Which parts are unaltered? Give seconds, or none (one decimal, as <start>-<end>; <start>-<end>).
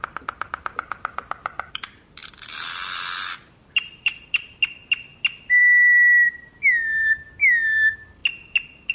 0.0-8.9